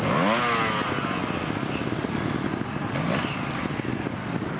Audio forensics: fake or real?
real